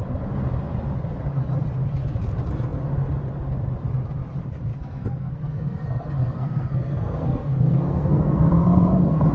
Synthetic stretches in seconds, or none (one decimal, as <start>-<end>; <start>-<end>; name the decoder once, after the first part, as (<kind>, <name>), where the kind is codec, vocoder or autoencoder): 4.7-9.3 (codec, SNAC)